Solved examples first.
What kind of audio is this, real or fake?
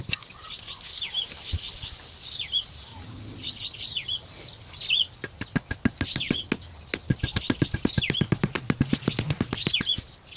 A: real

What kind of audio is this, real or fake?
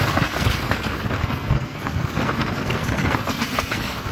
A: fake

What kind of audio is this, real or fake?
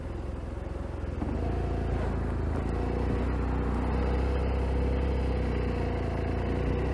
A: real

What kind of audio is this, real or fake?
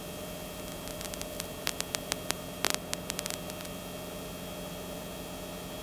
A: real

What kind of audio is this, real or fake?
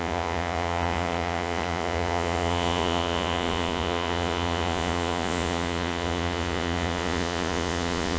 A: fake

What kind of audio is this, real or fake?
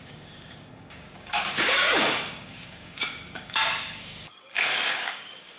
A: fake